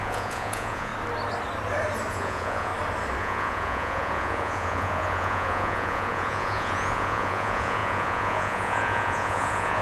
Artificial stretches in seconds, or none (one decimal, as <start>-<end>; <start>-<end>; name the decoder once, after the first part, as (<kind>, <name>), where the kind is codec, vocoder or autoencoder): 0.0-0.9 (vocoder, Vocos); 2.1-2.7; 3.2-9.8